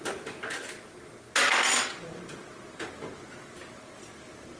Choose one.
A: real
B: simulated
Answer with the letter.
A